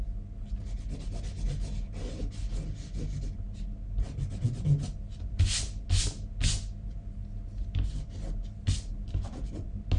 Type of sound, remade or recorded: recorded